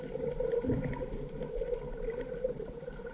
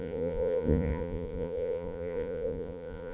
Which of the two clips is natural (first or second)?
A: first